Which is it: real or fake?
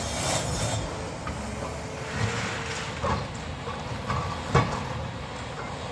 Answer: real